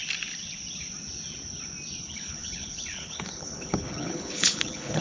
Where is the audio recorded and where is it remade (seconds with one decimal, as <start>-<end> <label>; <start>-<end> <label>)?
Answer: 0.0-2.0 recorded; 2.0-5.0 remade